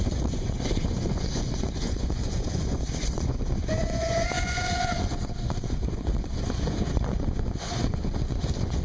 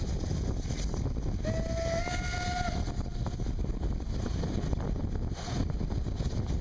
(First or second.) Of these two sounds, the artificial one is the first